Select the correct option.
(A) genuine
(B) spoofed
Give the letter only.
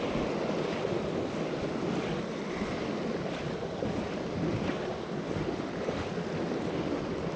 A